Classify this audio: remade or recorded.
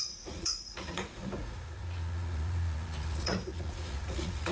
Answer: remade